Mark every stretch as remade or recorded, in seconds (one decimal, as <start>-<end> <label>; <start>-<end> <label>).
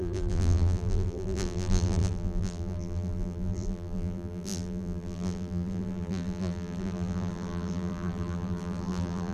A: 0.0-9.3 remade